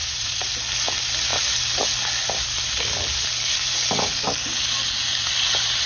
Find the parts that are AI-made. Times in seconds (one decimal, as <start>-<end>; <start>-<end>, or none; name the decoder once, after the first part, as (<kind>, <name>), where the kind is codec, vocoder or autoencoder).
0.0-0.5 (vocoder, Vocos)